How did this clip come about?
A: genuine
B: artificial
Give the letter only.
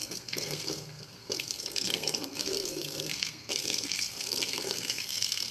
B